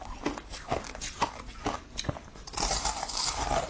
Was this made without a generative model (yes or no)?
yes